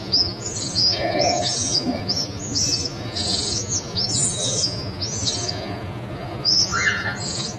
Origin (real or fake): fake